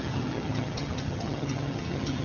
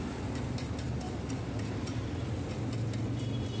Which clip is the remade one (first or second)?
first